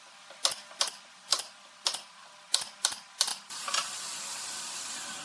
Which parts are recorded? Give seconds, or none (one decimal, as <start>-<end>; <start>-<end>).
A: 0.0-3.3